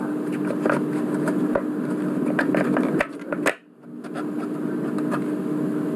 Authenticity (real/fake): real